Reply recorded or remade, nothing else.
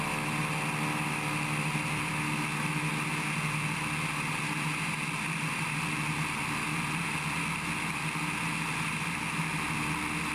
recorded